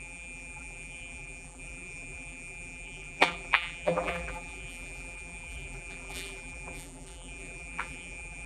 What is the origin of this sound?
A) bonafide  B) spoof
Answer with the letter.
B